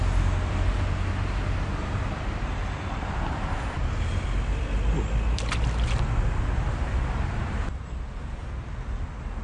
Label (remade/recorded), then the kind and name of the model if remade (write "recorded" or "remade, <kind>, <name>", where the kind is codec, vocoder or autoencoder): recorded